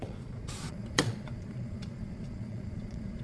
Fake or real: fake